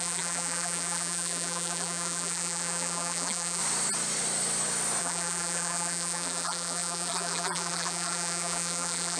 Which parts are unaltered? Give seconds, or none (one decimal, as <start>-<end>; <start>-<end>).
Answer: 3.6-5.0